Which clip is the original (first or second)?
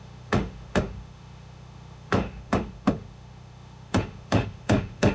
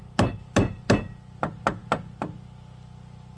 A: second